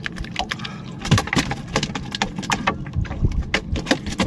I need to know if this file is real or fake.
real